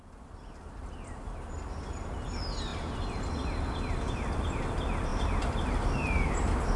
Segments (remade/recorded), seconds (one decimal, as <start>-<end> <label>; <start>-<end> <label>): 0.0-2.7 recorded; 2.7-4.1 remade; 4.1-5.1 recorded; 5.1-6.0 remade; 6.0-6.8 recorded